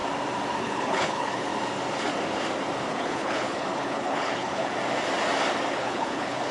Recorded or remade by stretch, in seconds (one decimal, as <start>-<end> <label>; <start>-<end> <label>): 0.0-0.6 recorded; 0.6-1.5 remade; 1.5-2.9 recorded; 2.9-4.7 remade; 4.7-5.7 recorded; 5.7-6.5 remade